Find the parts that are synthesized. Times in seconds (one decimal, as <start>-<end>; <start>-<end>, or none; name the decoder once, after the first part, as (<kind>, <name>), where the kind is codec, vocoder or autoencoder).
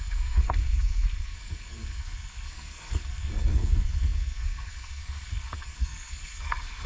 0.0-6.9 (codec, SNAC)